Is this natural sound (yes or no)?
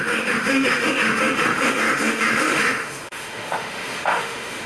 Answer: no